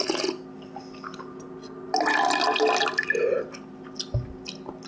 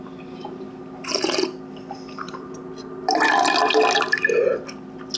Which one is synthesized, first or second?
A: second